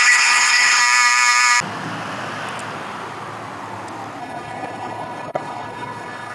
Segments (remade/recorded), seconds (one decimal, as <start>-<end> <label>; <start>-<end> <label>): 0.0-0.8 remade; 0.8-4.2 recorded; 4.2-6.3 remade